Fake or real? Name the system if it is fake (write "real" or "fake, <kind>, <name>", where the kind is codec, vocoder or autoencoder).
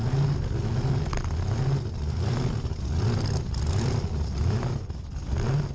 real